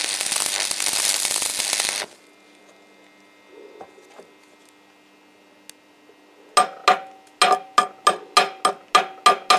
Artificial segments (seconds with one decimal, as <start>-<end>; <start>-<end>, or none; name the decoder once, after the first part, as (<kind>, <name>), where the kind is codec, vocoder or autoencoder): none